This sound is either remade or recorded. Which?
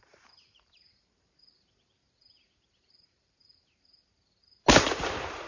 remade